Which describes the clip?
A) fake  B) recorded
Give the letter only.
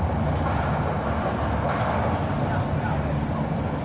B